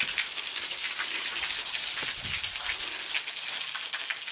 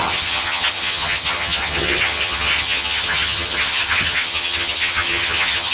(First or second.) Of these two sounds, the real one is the first